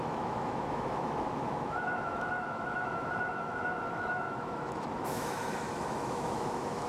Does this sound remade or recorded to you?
remade